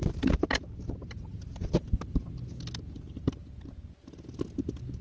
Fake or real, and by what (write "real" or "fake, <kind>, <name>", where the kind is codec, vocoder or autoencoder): real